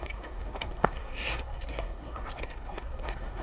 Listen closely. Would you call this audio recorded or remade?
remade